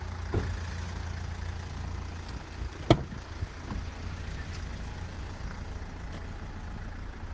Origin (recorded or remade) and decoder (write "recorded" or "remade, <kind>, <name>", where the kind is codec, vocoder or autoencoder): recorded